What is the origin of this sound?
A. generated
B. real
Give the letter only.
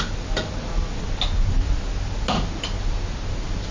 B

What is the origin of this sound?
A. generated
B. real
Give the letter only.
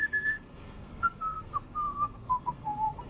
A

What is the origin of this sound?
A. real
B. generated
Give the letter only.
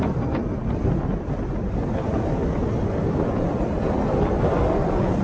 A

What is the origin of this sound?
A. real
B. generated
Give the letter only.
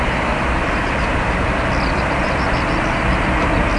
A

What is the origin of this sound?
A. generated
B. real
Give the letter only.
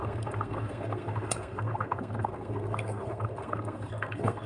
A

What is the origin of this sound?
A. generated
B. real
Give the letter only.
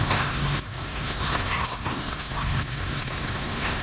A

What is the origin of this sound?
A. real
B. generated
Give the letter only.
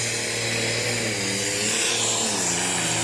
A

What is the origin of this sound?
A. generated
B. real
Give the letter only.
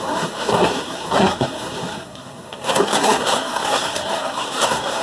A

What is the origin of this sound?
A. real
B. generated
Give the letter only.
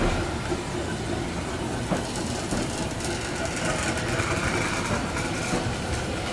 A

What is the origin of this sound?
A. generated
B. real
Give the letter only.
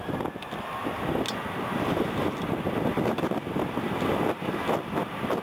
B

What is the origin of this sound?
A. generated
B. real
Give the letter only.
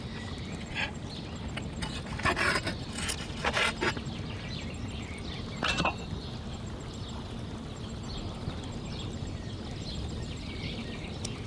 B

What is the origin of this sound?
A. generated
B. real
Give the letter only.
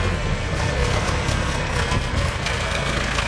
A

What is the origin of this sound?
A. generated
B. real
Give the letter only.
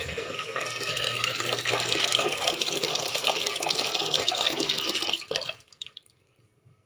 A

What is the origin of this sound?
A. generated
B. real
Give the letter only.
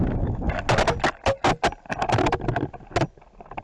B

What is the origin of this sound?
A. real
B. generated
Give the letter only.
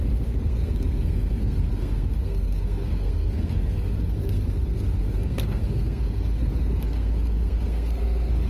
B